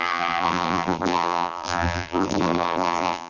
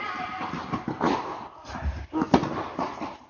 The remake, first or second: first